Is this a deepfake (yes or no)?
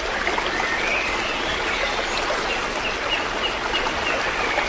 no